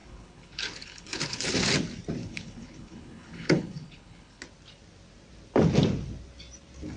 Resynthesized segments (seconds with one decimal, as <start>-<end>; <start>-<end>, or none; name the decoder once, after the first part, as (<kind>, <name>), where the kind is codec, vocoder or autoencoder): 0.0-1.5 (codec, HILCodec); 2.2-4.4